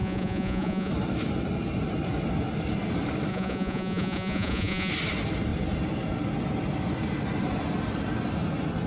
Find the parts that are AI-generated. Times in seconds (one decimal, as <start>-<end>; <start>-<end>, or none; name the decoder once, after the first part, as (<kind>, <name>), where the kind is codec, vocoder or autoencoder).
0.0-0.9 (vocoder, Vocos); 3.3-4.9